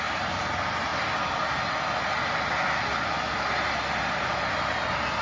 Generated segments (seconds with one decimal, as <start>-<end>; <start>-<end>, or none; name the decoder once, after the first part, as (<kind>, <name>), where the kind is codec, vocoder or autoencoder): none